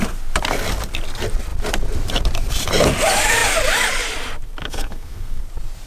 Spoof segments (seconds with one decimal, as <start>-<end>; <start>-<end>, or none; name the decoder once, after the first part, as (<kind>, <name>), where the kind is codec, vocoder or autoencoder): 4.6-5.4 (codec, SNAC)

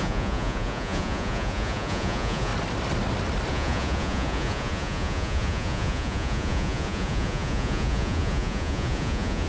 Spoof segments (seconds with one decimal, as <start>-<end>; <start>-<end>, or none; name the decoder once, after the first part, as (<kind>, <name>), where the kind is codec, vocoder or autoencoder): 0.0-2.5 (vocoder, Vocos); 3.5-9.5

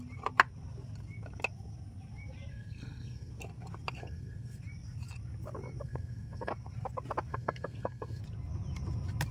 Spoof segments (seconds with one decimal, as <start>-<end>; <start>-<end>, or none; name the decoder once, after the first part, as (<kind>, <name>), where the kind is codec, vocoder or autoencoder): 2.5-3.3 (codec, SNAC); 4.0-4.6; 5.8-6.5; 7.3-8.2

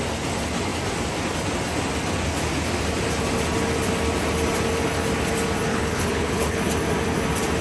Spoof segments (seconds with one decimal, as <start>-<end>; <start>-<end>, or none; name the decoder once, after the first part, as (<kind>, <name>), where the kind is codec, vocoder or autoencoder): 5.7-6.6 (codec, HILCodec)